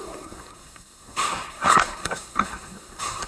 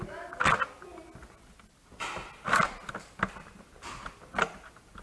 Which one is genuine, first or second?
second